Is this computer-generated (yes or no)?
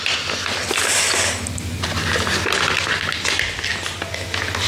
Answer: no